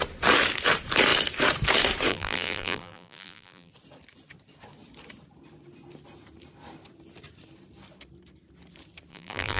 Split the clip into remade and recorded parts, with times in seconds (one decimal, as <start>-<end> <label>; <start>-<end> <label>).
0.0-2.1 recorded; 2.1-3.7 remade; 3.7-9.1 recorded; 9.1-9.6 remade